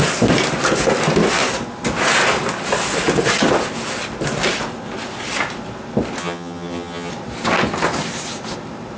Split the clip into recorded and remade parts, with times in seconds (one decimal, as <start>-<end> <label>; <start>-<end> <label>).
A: 0.0-6.2 recorded; 6.2-7.1 remade; 7.1-9.0 recorded